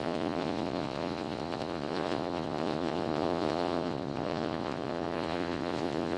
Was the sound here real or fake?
fake